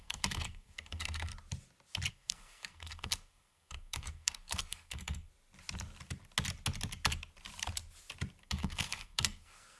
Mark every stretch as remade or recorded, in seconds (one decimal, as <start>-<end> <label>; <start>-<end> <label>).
0.0-1.3 remade; 1.3-2.1 recorded; 2.1-5.3 remade; 5.3-8.4 recorded; 8.4-9.8 remade